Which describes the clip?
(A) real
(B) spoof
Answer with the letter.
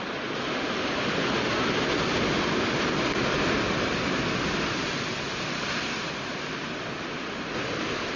A